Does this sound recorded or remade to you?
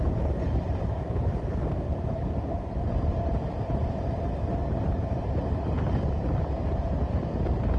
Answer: remade